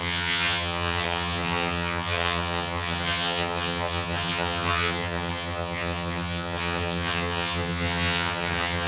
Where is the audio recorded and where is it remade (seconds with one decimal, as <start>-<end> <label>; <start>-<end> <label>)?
0.0-8.9 remade